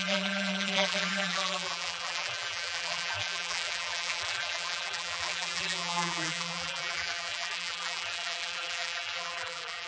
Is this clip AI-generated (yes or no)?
yes